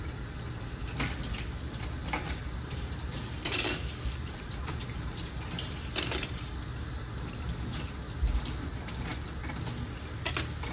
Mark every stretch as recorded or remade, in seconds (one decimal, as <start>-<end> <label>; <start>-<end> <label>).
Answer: 0.0-2.0 recorded; 2.0-6.6 remade; 6.6-10.7 recorded